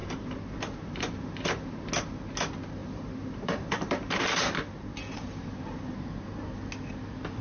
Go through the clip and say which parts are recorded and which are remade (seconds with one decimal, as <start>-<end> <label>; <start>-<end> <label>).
0.0-1.9 remade; 1.9-2.8 recorded; 2.8-6.5 remade; 6.5-7.4 recorded